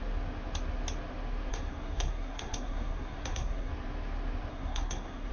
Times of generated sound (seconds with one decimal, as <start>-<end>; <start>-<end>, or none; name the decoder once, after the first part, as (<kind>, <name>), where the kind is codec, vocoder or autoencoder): 1.5-3.7 (codec, SNAC); 4.5-5.3